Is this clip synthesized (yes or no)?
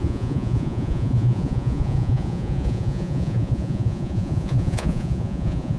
yes